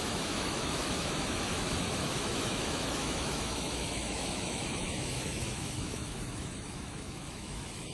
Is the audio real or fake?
fake